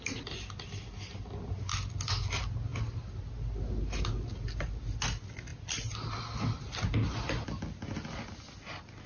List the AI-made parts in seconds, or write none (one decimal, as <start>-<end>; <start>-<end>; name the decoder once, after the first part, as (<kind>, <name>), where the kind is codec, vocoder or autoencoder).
none